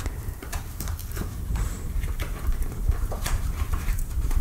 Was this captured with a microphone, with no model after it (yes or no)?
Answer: no